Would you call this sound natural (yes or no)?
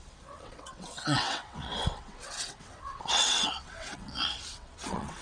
no